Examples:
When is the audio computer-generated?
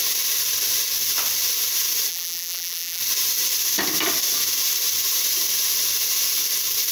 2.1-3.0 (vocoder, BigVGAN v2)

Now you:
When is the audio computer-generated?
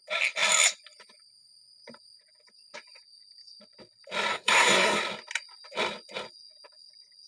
4.3-5.0 (codec, SNAC)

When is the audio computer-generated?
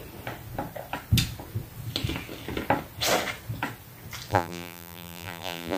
4.3-5.8 (vocoder, BigVGAN v2)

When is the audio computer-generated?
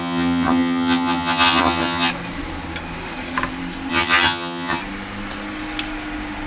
0.0-2.1 (vocoder, HiFi-GAN); 3.9-4.8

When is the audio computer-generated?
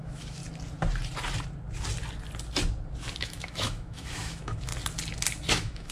0.0-0.4 (autoencoder, DAC-VAE); 3.2-4.7; 5.5-5.9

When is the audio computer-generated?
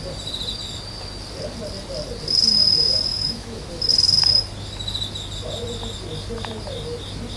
3.1-3.7 (autoencoder, DAC-VAE)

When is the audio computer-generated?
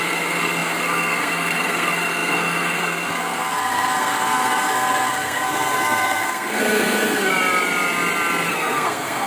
0.0-7.3 (codec, SNAC); 8.5-9.3